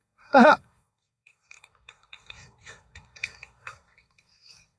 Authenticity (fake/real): fake